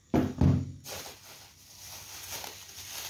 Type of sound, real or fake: real